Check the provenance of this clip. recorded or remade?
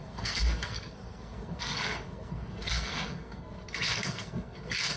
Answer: remade